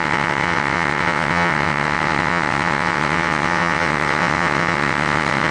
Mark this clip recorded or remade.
remade